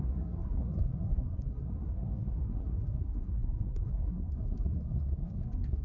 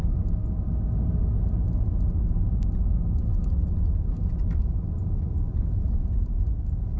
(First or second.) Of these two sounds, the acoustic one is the second